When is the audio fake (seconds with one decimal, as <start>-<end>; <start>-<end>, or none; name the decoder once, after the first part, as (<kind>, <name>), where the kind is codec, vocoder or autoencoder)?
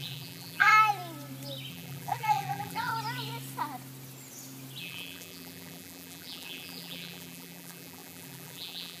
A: 0.0-0.7 (vocoder, BigVGAN v2); 1.7-2.9; 4.8-9.0